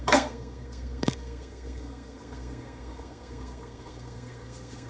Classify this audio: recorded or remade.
remade